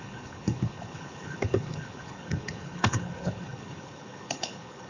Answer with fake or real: fake